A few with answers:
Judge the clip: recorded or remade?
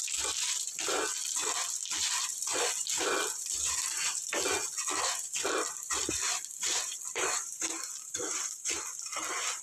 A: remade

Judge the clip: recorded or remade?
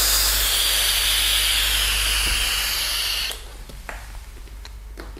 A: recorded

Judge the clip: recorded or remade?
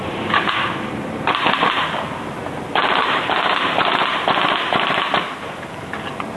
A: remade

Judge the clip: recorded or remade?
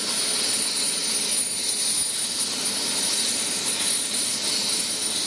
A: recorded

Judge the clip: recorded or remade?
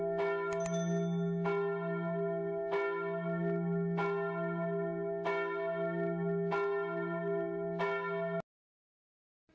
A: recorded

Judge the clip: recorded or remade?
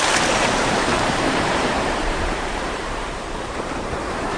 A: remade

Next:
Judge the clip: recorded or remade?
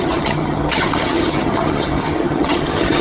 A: remade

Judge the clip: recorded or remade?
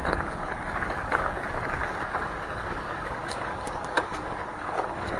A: remade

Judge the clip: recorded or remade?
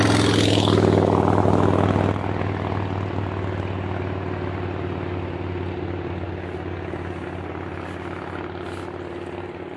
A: recorded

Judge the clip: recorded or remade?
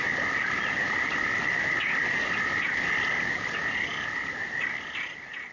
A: recorded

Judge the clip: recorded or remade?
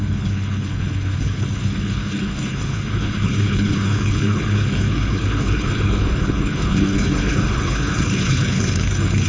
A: remade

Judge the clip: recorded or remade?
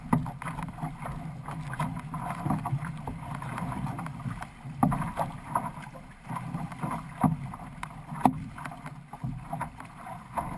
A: recorded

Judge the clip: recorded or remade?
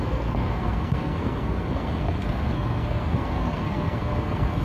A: remade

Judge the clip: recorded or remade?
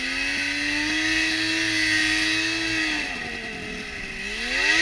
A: recorded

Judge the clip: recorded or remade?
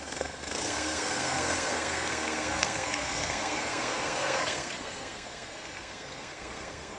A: remade